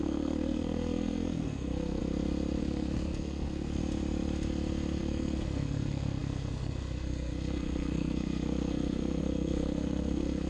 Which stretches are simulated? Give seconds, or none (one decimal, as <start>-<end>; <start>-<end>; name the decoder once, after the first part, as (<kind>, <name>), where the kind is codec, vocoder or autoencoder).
0.0-2.0 (codec, SNAC); 2.6-3.8; 5.0-10.5